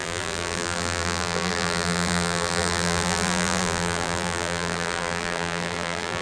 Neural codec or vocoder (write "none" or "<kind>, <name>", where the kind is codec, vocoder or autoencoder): vocoder, BigVGAN v2